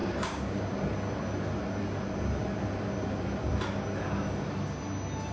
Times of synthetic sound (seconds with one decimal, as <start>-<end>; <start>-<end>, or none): 0.0-0.6